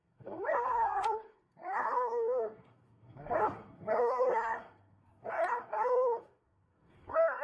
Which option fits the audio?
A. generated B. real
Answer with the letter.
A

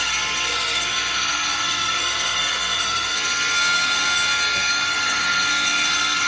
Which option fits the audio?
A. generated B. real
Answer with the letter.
A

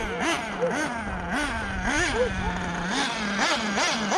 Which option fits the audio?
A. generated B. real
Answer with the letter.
B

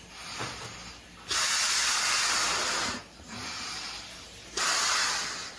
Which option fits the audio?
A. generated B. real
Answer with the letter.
B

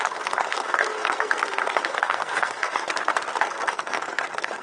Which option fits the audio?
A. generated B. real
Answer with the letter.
A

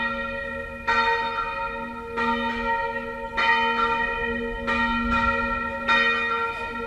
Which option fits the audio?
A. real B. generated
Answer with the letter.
A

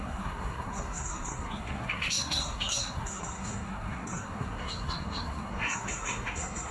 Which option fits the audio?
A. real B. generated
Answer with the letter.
B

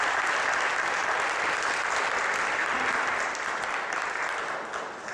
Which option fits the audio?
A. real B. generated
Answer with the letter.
A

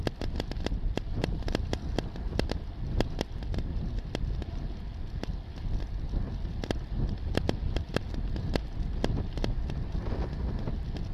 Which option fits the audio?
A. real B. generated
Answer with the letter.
A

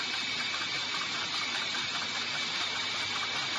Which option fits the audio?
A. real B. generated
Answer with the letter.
A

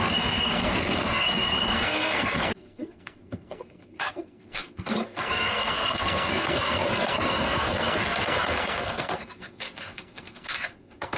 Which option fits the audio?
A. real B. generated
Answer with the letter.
B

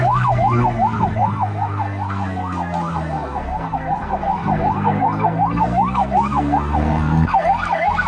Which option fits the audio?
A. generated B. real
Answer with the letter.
A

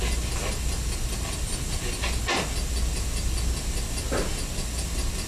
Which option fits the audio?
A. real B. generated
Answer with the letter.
A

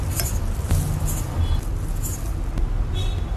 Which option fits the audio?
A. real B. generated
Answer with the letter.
A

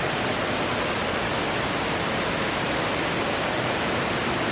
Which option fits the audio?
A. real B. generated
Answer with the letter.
A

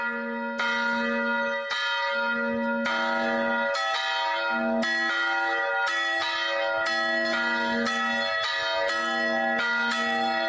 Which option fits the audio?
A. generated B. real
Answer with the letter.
B